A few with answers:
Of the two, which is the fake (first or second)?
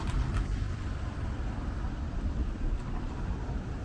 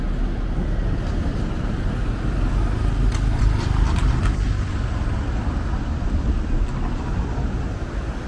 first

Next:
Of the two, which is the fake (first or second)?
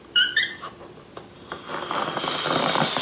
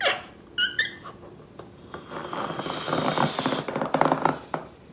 first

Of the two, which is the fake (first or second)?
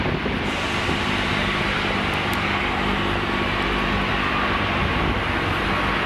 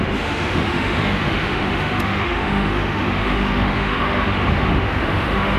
second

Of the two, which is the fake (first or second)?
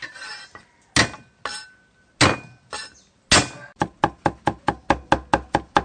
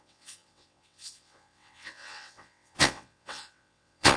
second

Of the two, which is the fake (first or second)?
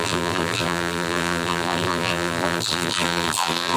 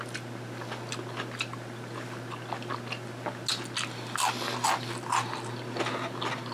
first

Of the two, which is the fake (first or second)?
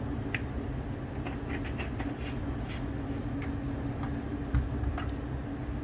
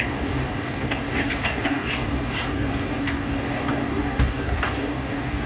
second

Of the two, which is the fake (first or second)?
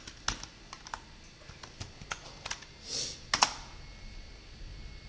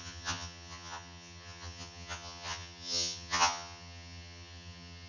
second